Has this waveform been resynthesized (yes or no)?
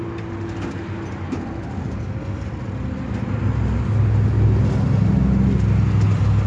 no